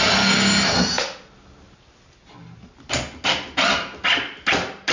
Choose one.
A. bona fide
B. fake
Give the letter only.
A